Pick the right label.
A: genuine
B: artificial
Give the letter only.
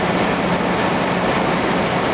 A